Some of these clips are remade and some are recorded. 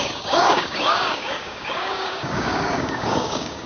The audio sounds remade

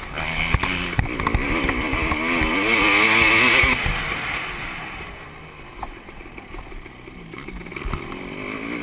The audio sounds recorded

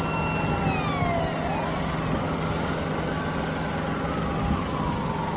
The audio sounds recorded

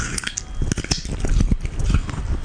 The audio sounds recorded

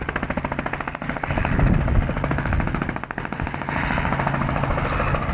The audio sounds recorded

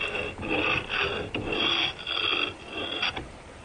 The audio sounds recorded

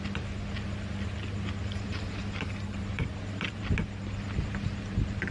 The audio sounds recorded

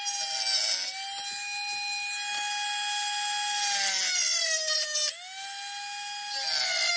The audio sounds recorded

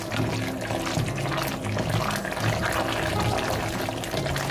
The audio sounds recorded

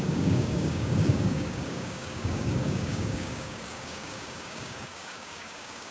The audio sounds remade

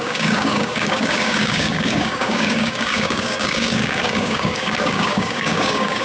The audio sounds remade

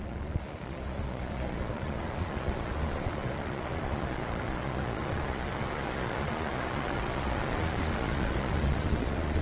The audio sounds remade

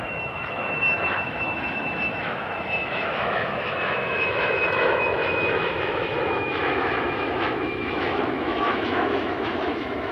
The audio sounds remade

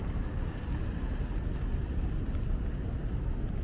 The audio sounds recorded